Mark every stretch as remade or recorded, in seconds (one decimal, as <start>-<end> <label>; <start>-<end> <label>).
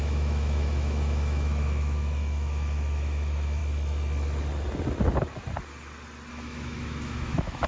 0.0-3.6 remade; 3.6-6.3 recorded; 6.3-7.7 remade